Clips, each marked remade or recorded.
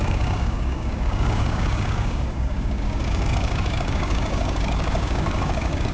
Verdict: remade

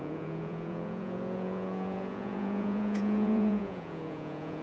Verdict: remade